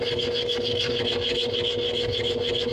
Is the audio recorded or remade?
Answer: recorded